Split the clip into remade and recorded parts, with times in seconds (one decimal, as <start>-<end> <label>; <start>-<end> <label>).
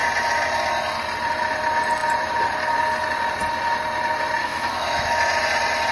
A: 0.0-4.4 recorded; 4.4-5.2 remade; 5.2-5.9 recorded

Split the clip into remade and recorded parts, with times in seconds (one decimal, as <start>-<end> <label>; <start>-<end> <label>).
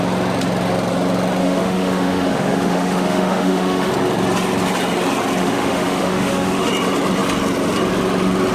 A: 0.0-1.4 recorded; 1.4-3.9 remade; 3.9-5.4 recorded; 5.4-6.7 remade; 6.7-8.5 recorded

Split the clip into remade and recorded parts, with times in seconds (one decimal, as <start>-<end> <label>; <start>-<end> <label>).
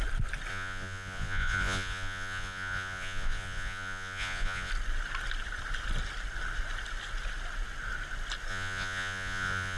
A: 0.0-0.5 recorded; 0.5-4.7 remade; 4.7-8.5 recorded; 8.5-9.8 remade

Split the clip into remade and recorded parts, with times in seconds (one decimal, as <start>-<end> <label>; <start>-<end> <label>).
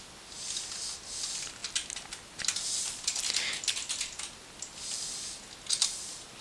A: 0.0-6.4 recorded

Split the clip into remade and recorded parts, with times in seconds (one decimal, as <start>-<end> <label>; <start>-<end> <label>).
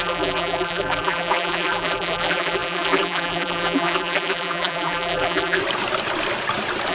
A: 0.0-5.6 remade; 5.6-6.9 recorded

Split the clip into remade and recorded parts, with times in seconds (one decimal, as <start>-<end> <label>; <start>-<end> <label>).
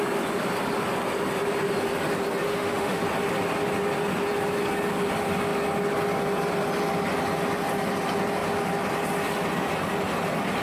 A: 0.0-2.5 recorded; 2.5-3.0 remade; 3.0-10.6 recorded